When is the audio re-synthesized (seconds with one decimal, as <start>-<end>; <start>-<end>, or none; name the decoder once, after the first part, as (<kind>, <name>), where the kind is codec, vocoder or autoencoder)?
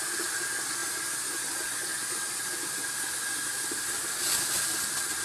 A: none